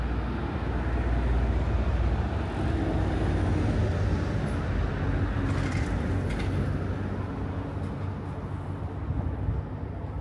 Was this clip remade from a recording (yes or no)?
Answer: no